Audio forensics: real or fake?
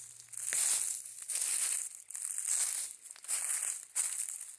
real